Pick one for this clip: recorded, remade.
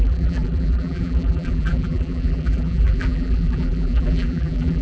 remade